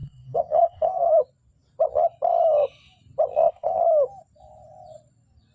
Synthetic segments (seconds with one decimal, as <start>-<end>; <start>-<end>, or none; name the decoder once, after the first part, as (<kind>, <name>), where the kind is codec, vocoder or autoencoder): 0.0-1.2 (codec, SNAC); 3.3-3.8

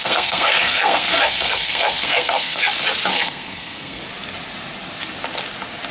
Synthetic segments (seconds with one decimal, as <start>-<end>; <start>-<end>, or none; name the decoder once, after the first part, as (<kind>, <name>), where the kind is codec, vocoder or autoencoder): 0.0-2.7 (codec, SNAC); 3.1-4.0

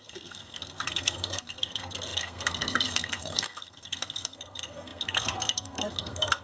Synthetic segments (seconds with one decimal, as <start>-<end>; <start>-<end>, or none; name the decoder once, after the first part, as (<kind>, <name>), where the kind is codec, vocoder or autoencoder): 0.0-6.4 (codec, SNAC)

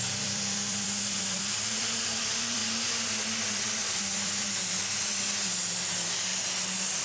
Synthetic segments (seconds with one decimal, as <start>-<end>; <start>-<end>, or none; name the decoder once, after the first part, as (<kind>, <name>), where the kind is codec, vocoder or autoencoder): 0.0-2.6 (vocoder, BigVGAN v2); 3.4-4.4; 5.8-6.3

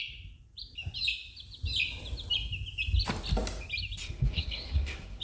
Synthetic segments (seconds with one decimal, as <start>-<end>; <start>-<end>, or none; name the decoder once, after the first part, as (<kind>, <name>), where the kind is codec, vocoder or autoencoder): 4.0-5.2 (codec, SNAC)

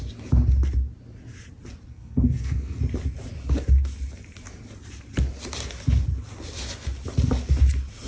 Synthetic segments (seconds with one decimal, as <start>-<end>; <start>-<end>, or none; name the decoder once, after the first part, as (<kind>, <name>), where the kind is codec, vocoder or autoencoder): 1.9-2.8 (codec, SNAC)